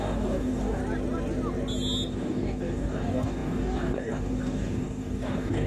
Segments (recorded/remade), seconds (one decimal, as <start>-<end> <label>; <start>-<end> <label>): 0.0-0.8 remade; 0.8-2.1 recorded; 2.1-5.7 remade